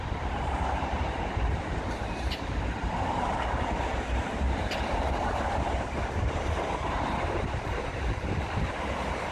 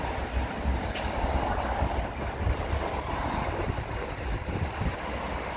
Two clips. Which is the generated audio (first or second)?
first